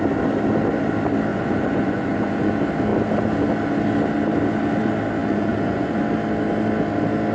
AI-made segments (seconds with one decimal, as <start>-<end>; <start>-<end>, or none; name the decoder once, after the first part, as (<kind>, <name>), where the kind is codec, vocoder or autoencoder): 1.3-2.5 (vocoder, Vocos); 5.2-6.0